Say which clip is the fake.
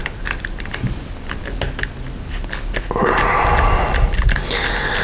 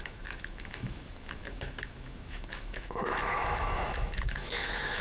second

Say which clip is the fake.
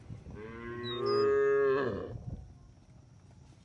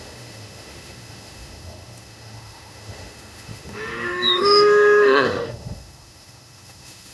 second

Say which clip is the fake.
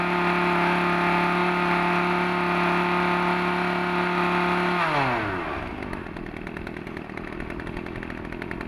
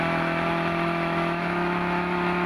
second